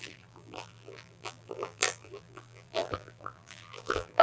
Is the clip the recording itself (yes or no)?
no